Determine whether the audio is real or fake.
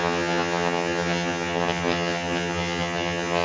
fake